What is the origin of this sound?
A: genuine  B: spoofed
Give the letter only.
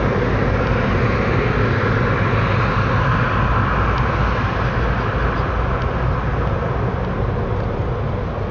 A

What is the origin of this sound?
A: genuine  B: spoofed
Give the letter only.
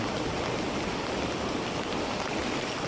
A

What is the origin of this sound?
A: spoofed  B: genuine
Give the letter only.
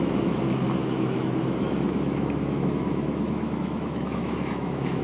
A